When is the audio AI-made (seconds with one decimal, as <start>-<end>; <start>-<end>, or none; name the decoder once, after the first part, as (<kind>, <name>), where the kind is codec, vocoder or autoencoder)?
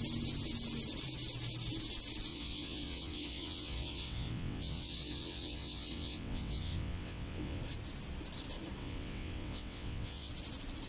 2.3-7.6 (vocoder, WaveNeXt); 8.8-10.3